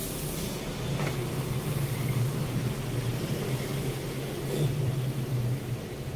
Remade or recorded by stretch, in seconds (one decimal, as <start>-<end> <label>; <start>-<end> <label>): 0.0-0.8 recorded; 0.8-3.7 remade; 3.7-4.4 recorded; 4.4-6.2 remade